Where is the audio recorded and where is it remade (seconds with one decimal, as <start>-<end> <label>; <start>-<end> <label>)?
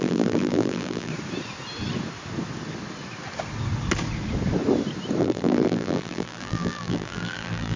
0.0-1.1 remade; 1.1-5.2 recorded; 5.2-7.8 remade